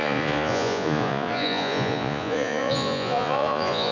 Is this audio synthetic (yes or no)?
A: yes